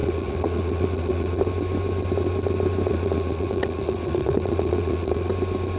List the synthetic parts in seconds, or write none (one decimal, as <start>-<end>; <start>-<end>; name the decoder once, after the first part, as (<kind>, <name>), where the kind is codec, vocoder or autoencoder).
0.0-1.4 (vocoder, Vocos); 2.9-5.3